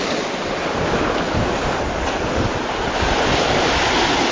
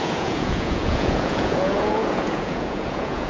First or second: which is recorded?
first